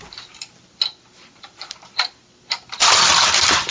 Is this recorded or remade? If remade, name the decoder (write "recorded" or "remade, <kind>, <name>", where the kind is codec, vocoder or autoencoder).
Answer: recorded